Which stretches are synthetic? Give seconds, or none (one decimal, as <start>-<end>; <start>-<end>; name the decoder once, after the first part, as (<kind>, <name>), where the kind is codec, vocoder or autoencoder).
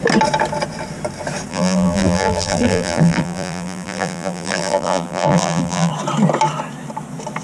1.5-5.9 (vocoder, BigVGAN v2)